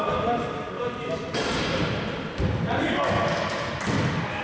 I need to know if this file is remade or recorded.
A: recorded